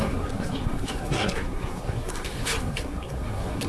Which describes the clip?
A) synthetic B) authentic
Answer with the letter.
A